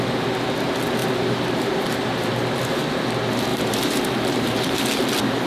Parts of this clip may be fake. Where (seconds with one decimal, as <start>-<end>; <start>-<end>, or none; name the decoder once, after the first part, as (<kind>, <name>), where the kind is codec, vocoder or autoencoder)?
1.0-2.8 (vocoder, BigVGAN v2); 3.5-4.8

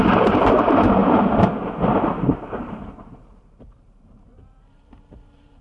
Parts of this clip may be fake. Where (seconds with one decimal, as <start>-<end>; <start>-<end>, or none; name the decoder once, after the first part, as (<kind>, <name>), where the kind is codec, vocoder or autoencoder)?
0.0-1.0 (vocoder, BigVGAN v2); 2.2-5.6

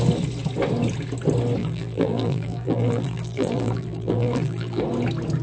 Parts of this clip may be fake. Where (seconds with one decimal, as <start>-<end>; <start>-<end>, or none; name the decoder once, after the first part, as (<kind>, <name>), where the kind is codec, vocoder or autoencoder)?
1.6-4.8 (vocoder, BigVGAN v2)

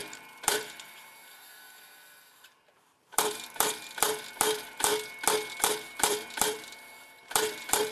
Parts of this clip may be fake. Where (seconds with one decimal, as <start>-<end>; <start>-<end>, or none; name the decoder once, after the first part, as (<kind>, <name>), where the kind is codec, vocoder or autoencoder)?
0.0-4.9 (vocoder, BigVGAN v2); 5.5-7.9

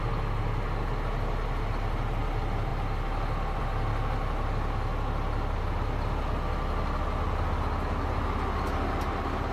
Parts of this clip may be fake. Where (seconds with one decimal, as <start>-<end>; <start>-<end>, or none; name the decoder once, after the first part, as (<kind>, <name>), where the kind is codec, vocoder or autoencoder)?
none

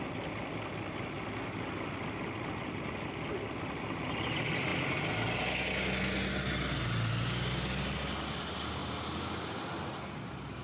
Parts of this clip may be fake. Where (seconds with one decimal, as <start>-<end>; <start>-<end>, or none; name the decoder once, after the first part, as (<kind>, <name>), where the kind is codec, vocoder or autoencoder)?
none